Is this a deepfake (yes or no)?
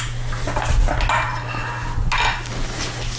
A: no